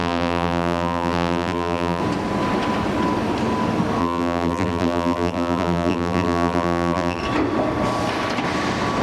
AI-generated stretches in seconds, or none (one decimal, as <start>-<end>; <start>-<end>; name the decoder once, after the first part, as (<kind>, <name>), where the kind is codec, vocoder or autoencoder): 0.0-2.0 (vocoder, BigVGAN v2); 4.0-7.2